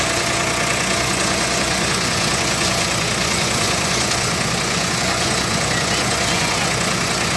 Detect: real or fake fake